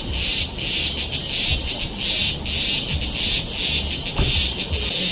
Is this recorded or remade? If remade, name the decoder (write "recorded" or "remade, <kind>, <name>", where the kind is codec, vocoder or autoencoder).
recorded